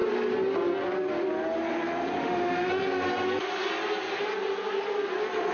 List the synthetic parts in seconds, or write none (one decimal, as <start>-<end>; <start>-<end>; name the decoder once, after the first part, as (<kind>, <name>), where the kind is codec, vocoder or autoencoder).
2.2-2.7 (autoencoder, DAC-VAE)

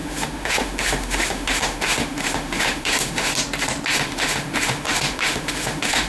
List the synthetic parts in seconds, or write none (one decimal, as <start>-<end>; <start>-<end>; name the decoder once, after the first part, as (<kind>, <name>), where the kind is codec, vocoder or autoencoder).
0.0-3.3 (autoencoder, DAC-VAE); 3.9-6.1

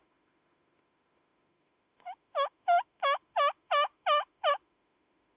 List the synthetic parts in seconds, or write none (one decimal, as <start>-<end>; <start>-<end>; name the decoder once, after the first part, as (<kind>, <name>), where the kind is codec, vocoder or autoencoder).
0.0-5.4 (autoencoder, DAC-VAE)

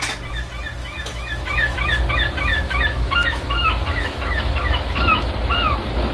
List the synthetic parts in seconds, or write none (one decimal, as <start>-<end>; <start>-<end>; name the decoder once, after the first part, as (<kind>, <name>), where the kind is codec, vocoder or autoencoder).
0.8-2.1 (autoencoder, DAC-VAE); 2.5-5.3

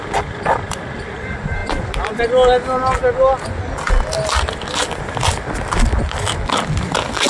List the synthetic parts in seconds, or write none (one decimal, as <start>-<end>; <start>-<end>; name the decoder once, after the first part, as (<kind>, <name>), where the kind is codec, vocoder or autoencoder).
none